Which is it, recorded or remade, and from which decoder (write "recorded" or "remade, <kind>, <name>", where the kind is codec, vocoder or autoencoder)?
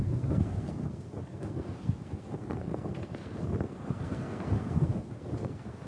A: remade, codec, SNAC